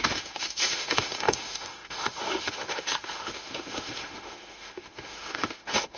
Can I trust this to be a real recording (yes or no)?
no